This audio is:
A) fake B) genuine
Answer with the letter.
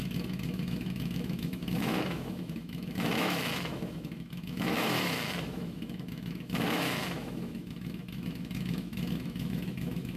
A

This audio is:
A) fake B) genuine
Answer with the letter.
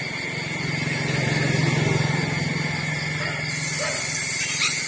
B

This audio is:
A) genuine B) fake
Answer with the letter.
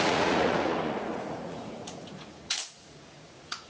B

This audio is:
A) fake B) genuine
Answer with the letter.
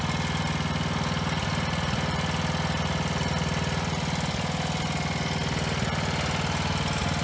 B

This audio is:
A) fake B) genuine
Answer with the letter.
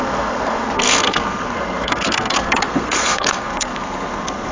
A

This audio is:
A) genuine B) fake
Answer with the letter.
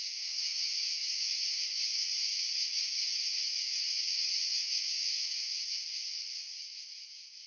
B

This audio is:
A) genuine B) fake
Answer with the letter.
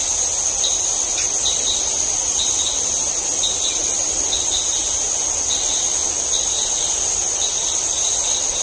A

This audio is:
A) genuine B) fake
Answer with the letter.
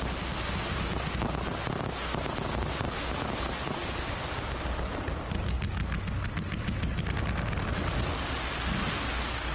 A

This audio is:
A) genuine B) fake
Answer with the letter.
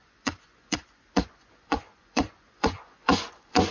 B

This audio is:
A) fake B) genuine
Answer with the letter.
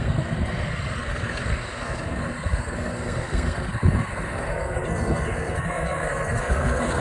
A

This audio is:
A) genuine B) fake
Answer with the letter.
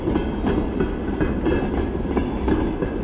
A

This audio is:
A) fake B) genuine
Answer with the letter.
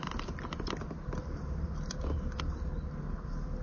B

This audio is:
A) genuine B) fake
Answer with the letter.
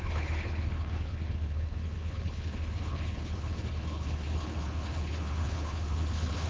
B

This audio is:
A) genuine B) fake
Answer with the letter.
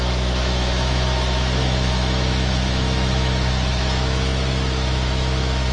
B